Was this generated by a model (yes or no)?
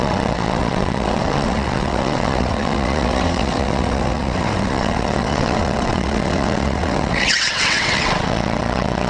yes